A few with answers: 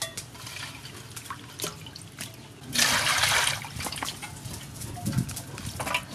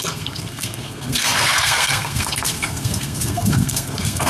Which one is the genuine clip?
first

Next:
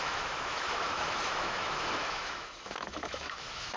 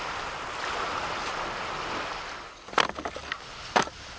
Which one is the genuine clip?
second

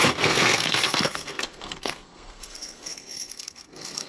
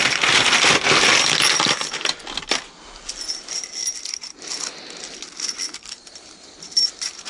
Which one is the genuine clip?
second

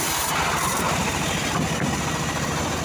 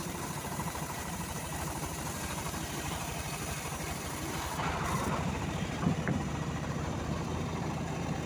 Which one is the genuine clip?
first